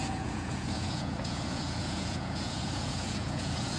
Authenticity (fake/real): fake